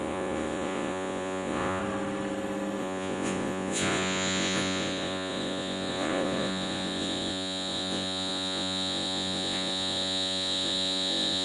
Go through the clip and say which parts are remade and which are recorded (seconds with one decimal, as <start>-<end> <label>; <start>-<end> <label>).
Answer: 0.0-1.8 remade; 1.8-2.8 recorded; 2.8-11.4 remade